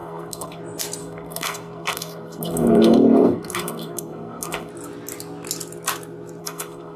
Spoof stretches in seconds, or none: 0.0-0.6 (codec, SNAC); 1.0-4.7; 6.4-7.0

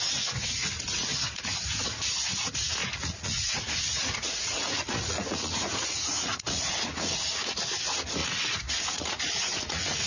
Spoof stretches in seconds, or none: 2.8-7.6 (vocoder, Vocos); 8.2-10.1

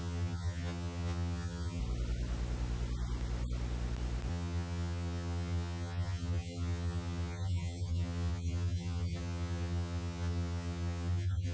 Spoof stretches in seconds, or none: 0.0-1.8 (vocoder, HiFi-GAN); 4.3-11.5

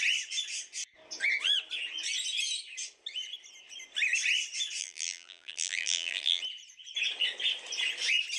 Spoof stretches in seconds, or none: 4.8-6.4 (vocoder, BigVGAN v2)

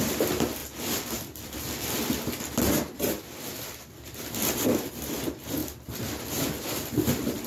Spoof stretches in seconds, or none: none